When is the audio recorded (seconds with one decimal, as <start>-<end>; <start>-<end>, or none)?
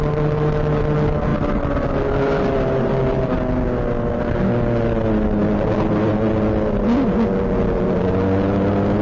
0.0-9.0